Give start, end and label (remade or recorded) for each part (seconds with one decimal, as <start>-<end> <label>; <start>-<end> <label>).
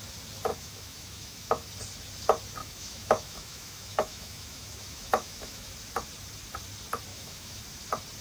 0.0-0.5 recorded; 0.5-1.7 remade; 1.7-2.6 recorded; 2.6-5.7 remade; 5.7-7.1 recorded; 7.1-7.6 remade; 7.6-8.2 recorded